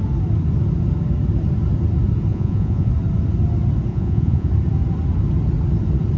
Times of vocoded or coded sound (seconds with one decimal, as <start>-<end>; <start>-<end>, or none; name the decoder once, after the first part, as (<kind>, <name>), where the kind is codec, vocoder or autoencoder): 2.3-2.9 (vocoder, Vocos); 3.9-4.5